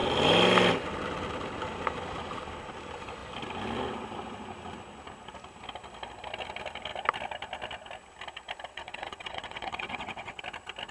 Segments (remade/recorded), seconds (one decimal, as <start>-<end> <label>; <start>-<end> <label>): 0.0-8.7 recorded; 8.7-10.4 remade; 10.4-10.9 recorded